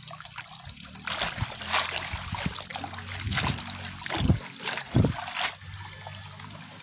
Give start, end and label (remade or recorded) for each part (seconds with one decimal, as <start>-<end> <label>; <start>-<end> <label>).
0.0-6.8 recorded